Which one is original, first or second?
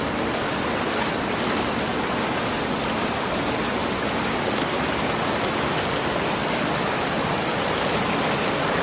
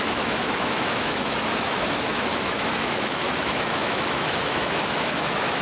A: first